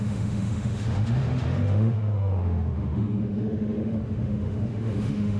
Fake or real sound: fake